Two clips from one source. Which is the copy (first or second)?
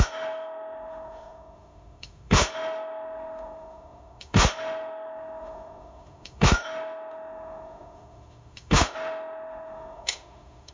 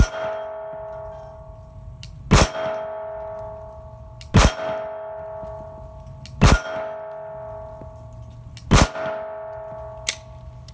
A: first